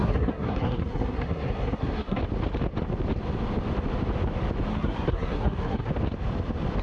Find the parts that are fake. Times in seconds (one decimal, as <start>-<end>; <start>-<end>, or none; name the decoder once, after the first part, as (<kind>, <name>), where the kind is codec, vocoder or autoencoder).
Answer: 0.0-2.2 (codec, SNAC); 4.7-5.9